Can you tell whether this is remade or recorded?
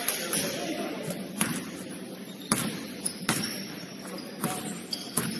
remade